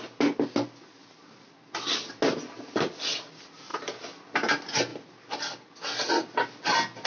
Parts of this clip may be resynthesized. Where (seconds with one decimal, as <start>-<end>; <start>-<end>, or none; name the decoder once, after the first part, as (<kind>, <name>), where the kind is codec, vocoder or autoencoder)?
none